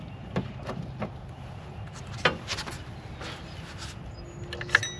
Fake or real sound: real